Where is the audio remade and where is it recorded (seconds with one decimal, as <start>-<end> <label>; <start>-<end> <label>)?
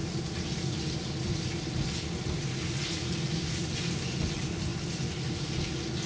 0.0-6.1 recorded